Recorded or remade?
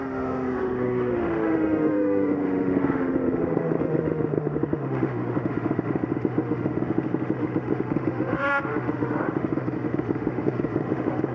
remade